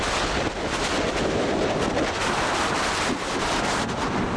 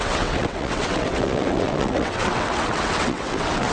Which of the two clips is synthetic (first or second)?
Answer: second